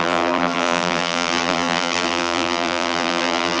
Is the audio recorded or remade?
remade